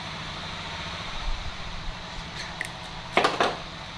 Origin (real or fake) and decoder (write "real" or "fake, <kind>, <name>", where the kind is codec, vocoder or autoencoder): fake, vocoder, BigVGAN v2